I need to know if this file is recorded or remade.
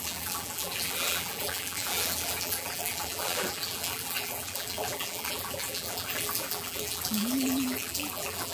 remade